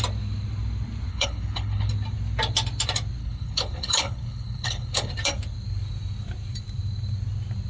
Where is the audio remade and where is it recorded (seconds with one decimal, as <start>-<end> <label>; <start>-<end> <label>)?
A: 0.0-1.1 recorded; 1.1-1.9 remade; 1.9-3.2 recorded; 3.2-5.1 remade; 5.1-7.7 recorded